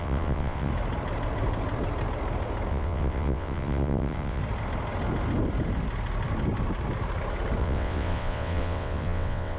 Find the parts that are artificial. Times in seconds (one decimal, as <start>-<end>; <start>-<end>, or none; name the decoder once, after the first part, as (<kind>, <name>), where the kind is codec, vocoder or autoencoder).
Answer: 0.0-0.7 (vocoder, WaveNeXt); 2.7-4.4; 7.6-9.6